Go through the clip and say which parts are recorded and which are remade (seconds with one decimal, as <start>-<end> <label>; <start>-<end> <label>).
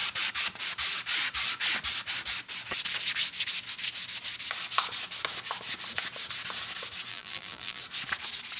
0.0-7.1 recorded; 7.1-7.8 remade; 7.8-8.6 recorded